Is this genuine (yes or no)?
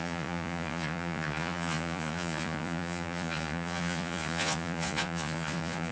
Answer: no